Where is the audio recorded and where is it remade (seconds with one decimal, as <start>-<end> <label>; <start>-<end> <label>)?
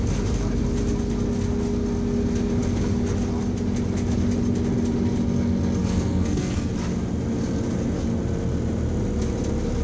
0.0-5.8 recorded; 5.8-6.7 remade; 6.7-9.8 recorded